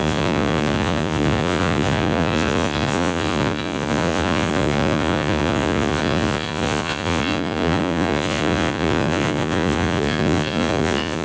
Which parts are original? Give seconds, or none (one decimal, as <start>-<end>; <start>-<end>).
none